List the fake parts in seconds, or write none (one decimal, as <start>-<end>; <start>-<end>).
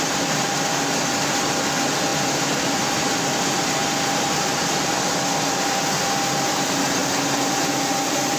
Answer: none